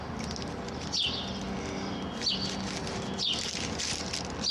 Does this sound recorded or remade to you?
recorded